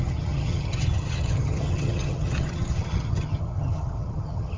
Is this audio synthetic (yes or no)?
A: yes